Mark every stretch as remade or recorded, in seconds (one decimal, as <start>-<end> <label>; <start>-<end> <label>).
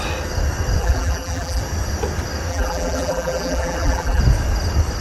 0.0-0.8 recorded; 0.8-1.6 remade; 1.6-2.5 recorded; 2.5-4.2 remade; 4.2-5.0 recorded